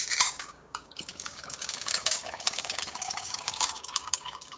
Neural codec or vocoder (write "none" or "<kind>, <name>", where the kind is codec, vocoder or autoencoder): codec, DAC